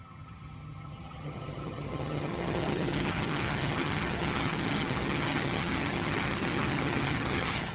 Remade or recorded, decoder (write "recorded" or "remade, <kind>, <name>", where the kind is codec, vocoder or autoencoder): remade, vocoder, HiFi-GAN